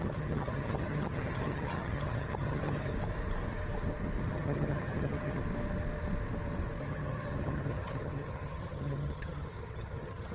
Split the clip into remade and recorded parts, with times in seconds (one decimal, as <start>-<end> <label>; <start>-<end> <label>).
0.0-2.9 remade; 2.9-4.3 recorded; 4.3-5.4 remade; 5.4-6.8 recorded; 6.8-10.3 remade